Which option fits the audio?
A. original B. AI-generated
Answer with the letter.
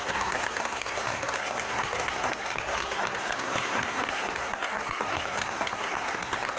B